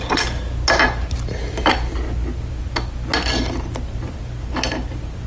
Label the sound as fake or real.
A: real